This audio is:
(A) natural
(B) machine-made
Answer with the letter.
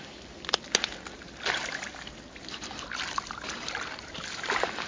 A